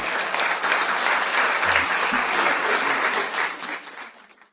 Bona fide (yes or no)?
yes